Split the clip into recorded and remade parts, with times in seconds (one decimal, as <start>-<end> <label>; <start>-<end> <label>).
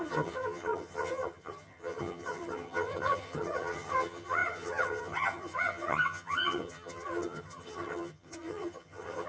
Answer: 0.0-9.3 remade